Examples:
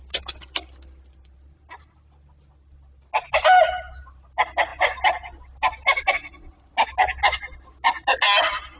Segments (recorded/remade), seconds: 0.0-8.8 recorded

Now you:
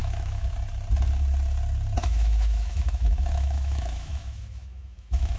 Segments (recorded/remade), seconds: 0.0-0.5 remade; 0.5-2.0 recorded; 2.0-5.4 remade

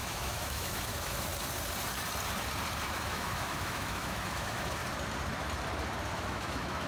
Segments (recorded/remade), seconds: 0.0-1.3 remade; 1.3-2.9 recorded; 2.9-4.8 remade; 4.8-6.1 recorded; 6.1-6.9 remade

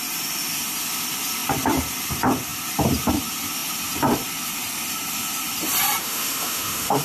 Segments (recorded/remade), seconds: 0.0-6.0 recorded; 6.0-7.0 remade

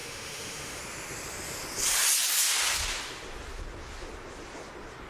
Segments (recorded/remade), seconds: 0.0-0.8 remade; 0.8-5.1 recorded

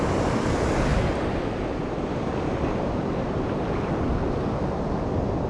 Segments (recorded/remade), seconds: 0.0-5.5 recorded

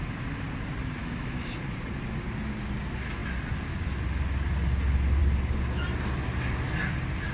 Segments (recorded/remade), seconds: 0.0-1.0 recorded; 1.0-1.6 remade; 1.6-7.3 recorded

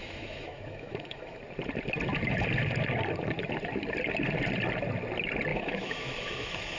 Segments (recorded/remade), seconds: 0.0-1.4 remade; 1.4-5.5 recorded; 5.5-6.8 remade